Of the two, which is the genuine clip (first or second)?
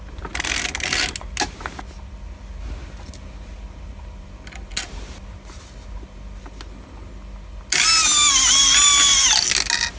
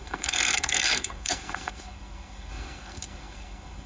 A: first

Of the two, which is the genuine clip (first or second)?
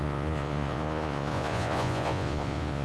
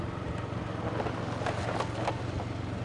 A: second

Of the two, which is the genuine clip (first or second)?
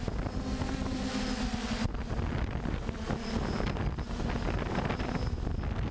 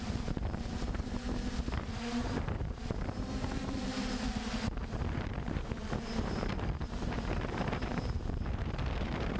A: first